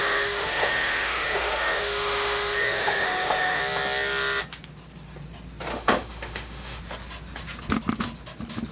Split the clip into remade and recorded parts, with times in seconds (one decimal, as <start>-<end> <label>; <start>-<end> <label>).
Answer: 0.0-3.6 remade; 3.6-5.7 recorded; 5.7-6.8 remade; 6.8-8.7 recorded